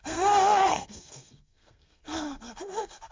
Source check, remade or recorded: remade